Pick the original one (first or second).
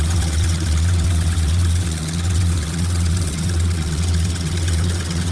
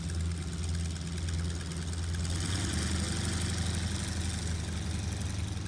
second